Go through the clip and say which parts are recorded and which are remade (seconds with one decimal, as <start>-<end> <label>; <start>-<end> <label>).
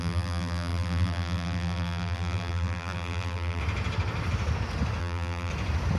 0.0-3.6 remade; 3.6-5.0 recorded; 5.0-5.5 remade; 5.5-6.0 recorded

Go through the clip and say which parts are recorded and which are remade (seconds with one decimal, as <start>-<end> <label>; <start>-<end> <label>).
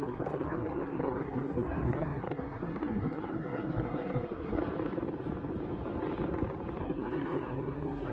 0.0-4.6 remade; 4.6-6.8 recorded; 6.8-8.1 remade